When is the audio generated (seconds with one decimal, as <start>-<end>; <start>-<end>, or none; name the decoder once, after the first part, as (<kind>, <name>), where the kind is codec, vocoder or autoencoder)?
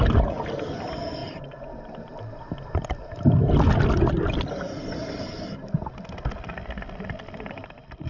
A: none